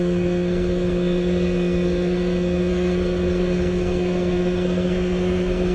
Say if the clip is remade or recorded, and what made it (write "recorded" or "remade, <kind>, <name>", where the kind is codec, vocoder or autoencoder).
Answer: remade, codec, SNAC